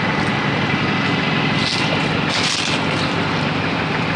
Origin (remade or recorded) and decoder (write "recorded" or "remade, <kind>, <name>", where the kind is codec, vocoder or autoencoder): recorded